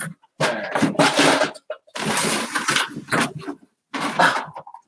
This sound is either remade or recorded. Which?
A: recorded